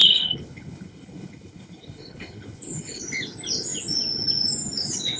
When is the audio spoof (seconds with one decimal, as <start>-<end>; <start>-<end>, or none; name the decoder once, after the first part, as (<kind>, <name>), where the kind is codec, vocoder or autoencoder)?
0.0-3.1 (codec, HILCodec)